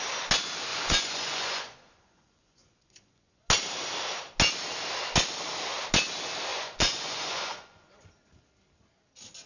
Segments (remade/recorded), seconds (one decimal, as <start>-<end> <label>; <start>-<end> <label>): 0.0-0.7 recorded; 0.7-3.5 remade; 3.5-6.5 recorded; 6.5-8.1 remade; 8.1-9.5 recorded